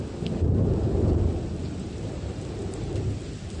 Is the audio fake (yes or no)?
no